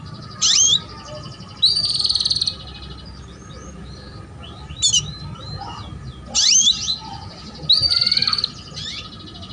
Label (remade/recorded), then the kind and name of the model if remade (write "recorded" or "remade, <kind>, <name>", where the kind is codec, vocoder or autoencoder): recorded